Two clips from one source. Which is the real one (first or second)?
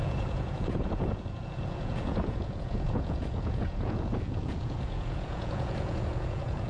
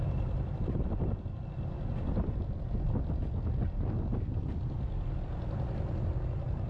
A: second